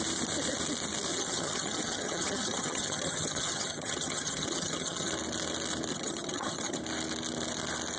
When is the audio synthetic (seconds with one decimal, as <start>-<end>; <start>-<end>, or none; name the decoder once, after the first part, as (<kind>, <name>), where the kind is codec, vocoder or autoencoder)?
1.1-5.1 (vocoder, HiFi-GAN); 5.9-6.8